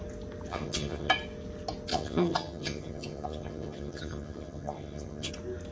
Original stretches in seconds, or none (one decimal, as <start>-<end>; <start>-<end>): 0.0-0.5; 1.1-1.9; 5.3-5.7